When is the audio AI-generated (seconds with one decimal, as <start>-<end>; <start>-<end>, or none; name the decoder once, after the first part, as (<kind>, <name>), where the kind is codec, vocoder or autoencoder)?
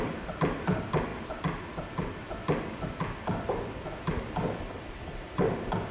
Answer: none